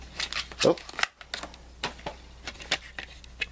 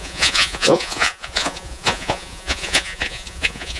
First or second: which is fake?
second